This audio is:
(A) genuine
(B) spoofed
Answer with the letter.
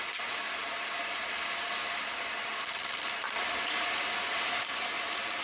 B